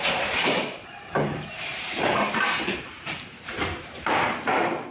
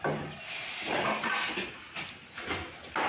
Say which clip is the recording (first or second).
second